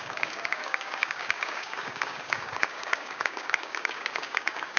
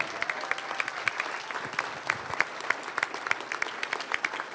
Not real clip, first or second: first